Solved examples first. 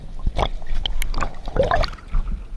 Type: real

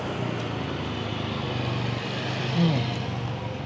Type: real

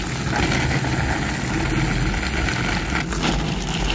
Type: real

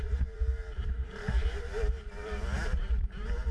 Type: fake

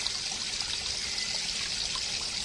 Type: real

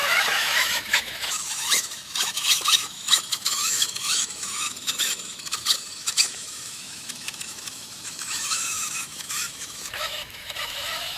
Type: fake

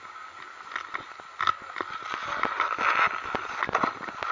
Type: real